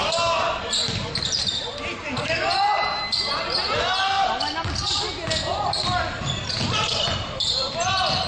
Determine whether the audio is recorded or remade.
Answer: recorded